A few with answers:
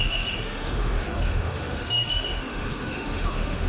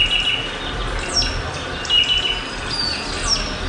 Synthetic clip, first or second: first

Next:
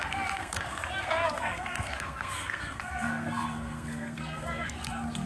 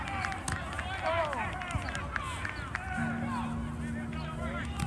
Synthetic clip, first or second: first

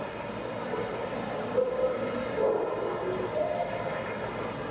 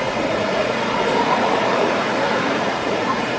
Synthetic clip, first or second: second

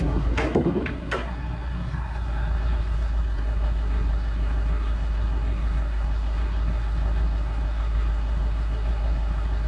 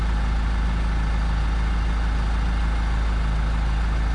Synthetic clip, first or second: first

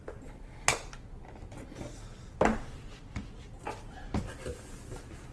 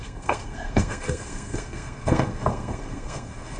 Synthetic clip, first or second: second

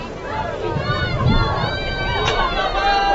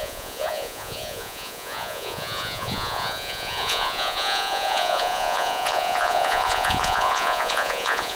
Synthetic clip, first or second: second